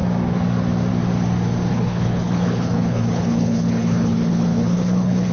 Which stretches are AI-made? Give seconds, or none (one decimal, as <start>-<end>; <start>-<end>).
1.7-5.3